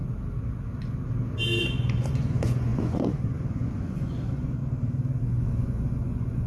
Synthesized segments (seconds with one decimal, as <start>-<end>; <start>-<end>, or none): 1.6-4.6; 5.2-6.5